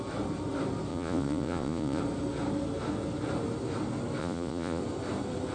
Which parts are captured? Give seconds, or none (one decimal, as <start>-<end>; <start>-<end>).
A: 0.0-0.9; 2.0-4.2; 4.8-5.5